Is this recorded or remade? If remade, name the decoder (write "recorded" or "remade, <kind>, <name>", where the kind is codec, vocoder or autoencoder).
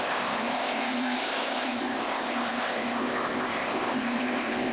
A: remade, codec, ZipCodec